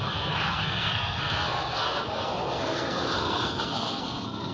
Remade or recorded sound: remade